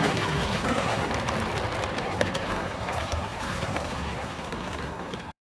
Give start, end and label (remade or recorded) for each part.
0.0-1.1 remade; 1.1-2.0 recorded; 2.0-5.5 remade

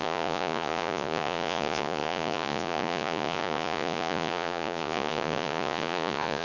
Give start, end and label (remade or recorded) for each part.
0.0-6.4 remade